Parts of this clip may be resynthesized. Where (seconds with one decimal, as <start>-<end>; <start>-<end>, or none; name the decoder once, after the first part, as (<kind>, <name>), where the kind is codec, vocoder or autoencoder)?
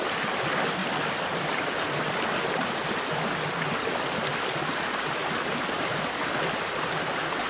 0.0-0.8 (vocoder, BigVGAN v2); 3.7-7.5